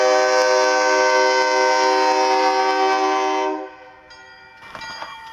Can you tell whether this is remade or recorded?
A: recorded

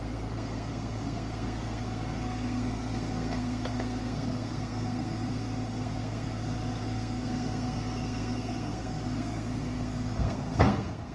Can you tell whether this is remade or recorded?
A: remade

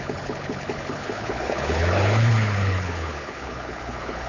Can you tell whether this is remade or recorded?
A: remade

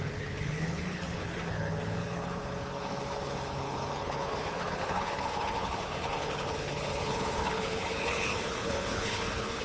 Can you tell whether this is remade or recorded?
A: remade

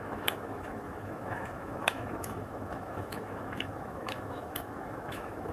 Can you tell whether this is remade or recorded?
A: remade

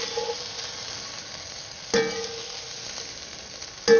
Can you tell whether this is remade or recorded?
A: recorded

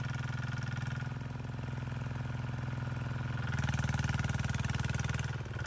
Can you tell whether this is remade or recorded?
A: recorded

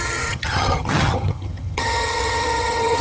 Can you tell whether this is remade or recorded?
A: remade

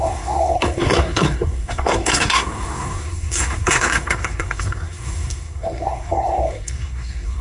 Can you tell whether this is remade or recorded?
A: remade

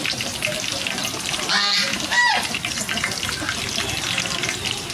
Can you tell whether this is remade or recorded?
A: recorded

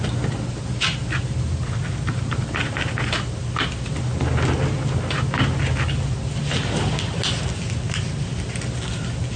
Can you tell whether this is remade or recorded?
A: recorded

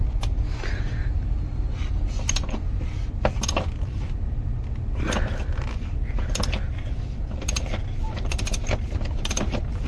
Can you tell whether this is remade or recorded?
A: recorded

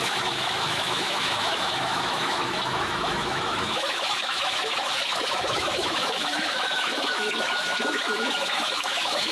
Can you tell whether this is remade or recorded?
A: remade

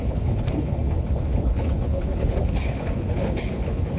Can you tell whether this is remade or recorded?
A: remade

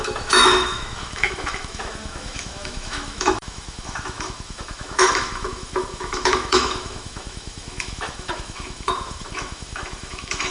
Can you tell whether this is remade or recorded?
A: remade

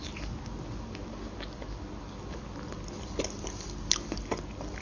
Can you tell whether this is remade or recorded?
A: recorded